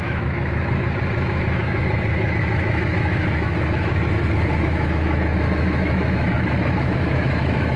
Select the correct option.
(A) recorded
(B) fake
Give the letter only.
B